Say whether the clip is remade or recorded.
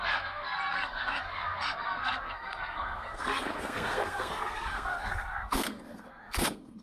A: remade